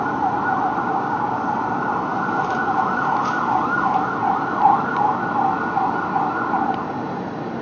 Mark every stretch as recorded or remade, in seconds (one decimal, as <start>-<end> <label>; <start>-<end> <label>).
0.0-0.8 recorded; 0.8-1.4 remade; 1.4-7.6 recorded